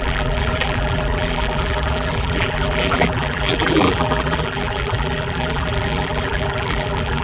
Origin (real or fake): fake